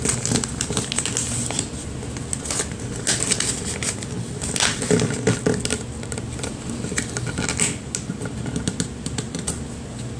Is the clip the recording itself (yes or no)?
yes